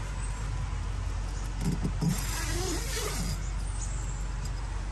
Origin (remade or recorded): recorded